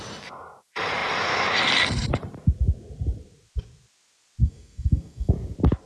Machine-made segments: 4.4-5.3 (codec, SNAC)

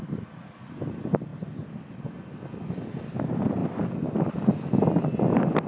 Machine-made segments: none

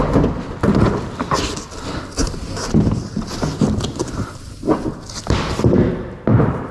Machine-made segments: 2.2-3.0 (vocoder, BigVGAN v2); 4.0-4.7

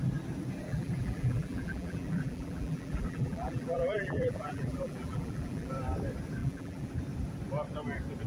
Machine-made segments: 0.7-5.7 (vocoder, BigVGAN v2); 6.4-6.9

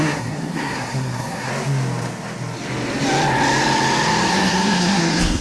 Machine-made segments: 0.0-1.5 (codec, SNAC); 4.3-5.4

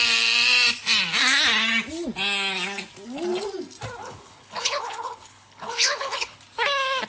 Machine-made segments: 4.0-6.4 (codec, HILCodec)